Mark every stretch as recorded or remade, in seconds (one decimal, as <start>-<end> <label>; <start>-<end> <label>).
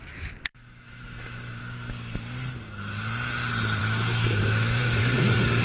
0.0-0.5 recorded; 0.5-1.6 remade; 1.6-3.8 recorded; 3.8-5.0 remade; 5.0-5.6 recorded